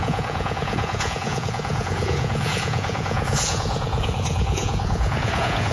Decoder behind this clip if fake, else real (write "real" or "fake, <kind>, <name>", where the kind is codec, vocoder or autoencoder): fake, vocoder, Vocos